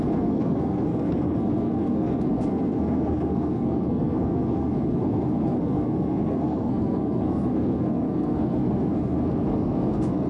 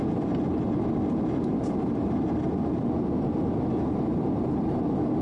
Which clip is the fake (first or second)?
first